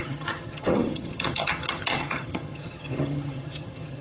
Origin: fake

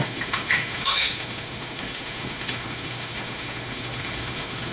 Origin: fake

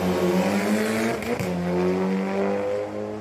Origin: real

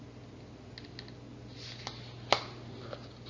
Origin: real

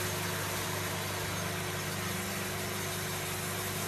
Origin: real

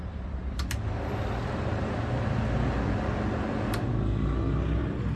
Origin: real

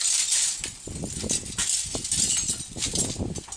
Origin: real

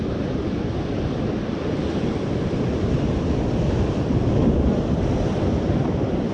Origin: fake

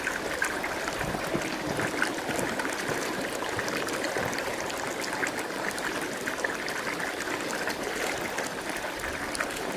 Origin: real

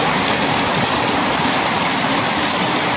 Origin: real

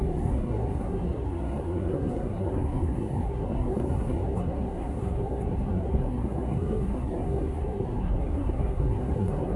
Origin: fake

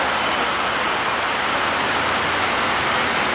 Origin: real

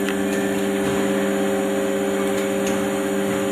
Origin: real